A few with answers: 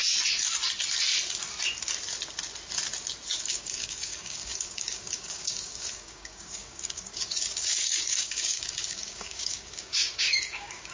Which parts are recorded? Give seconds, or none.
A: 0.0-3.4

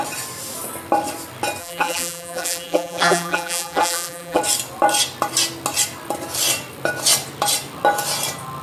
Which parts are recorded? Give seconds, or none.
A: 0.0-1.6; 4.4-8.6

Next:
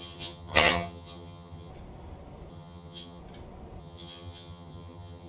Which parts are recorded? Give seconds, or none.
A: 1.7-2.5; 3.2-3.8